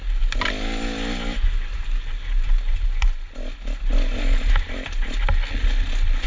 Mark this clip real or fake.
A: real